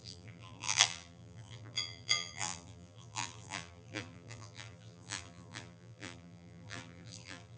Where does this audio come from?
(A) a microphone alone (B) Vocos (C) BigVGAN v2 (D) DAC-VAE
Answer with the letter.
C